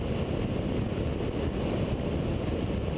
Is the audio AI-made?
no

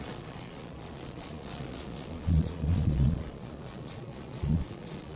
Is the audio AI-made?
yes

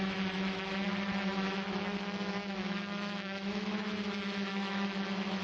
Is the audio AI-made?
yes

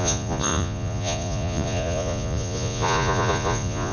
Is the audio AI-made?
yes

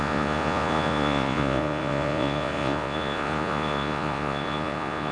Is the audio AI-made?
yes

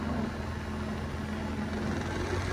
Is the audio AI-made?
no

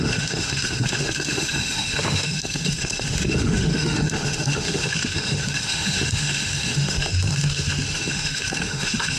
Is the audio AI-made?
yes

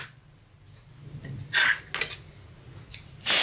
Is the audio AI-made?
no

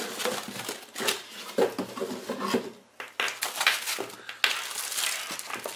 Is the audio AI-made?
no